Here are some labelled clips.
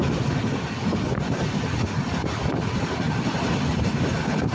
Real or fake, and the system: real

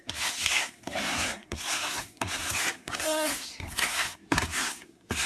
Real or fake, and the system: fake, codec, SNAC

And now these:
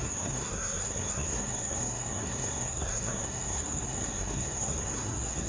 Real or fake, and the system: fake, codec, SNAC